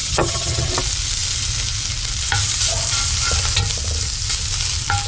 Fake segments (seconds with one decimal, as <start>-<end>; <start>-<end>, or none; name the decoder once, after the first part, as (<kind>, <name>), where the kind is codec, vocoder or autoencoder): 0.0-0.7 (vocoder, HiFi-GAN)

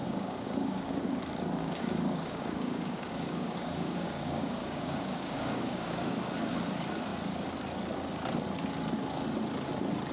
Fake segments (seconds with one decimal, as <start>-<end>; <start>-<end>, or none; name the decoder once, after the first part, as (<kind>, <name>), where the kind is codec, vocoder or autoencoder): 0.0-1.1 (codec, DAC); 1.6-6.1

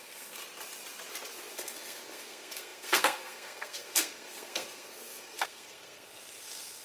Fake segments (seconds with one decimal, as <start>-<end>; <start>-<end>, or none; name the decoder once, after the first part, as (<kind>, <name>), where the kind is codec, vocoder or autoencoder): 0.0-0.4 (codec, SNAC); 1.5-6.8